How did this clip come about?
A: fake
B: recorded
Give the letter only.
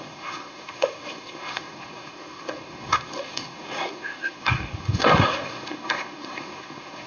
A